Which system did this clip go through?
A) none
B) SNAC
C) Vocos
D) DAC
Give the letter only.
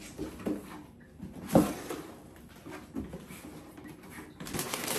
A